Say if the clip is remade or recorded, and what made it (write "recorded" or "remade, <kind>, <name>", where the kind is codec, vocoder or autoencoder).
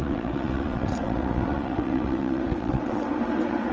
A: remade, vocoder, WaveNeXt